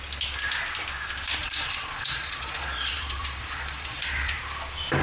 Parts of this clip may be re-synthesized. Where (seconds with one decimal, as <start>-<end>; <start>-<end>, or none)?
1.4-4.4